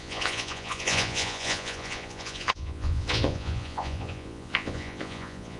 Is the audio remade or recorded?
remade